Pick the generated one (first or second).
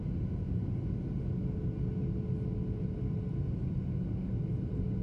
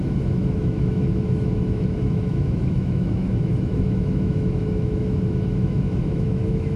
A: second